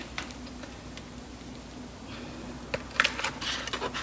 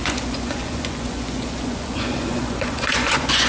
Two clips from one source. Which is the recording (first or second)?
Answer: first